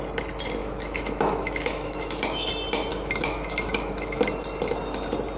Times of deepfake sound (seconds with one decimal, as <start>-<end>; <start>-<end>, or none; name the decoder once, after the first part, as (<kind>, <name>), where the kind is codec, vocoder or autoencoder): 0.6-2.5 (autoencoder, DAC-VAE); 2.9-4.2